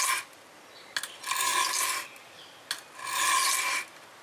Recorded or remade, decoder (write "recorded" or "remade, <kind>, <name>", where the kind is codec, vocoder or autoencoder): recorded